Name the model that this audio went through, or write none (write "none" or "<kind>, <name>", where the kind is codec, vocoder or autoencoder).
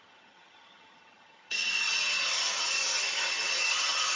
vocoder, HiFi-GAN